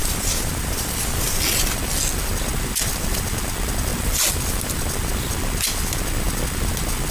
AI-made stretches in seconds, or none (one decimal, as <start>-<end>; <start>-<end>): 0.0-1.4